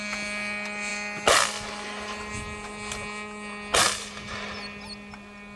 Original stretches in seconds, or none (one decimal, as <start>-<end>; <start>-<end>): 0.0-5.6